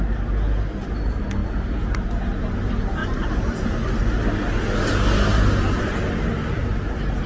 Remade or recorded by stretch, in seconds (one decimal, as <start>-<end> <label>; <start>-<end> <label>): 0.0-1.4 recorded; 1.4-2.1 remade; 2.1-3.0 recorded; 3.0-4.0 remade; 4.0-5.3 recorded; 5.3-5.9 remade; 5.9-6.4 recorded; 6.4-7.3 remade